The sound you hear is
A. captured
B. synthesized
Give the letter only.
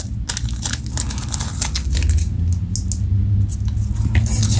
A